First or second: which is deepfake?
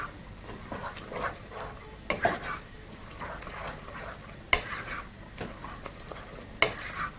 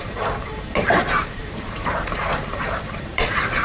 second